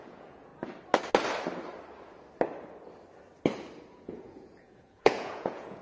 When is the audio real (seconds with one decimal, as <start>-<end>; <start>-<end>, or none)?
0.5-3.9